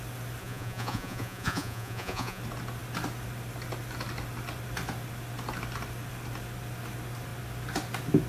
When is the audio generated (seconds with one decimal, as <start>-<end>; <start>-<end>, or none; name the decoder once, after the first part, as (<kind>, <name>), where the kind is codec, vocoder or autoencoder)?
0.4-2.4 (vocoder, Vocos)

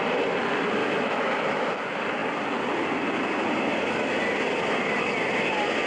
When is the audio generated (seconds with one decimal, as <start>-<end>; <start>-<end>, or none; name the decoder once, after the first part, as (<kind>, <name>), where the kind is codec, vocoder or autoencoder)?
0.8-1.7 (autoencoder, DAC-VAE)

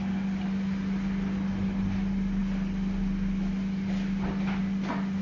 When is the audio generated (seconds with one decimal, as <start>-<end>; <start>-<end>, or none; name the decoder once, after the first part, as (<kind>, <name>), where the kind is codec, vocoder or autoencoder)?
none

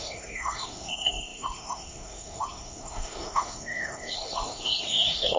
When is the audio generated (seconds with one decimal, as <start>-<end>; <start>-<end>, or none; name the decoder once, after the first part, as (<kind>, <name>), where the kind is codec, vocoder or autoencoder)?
0.0-5.4 (codec, SNAC)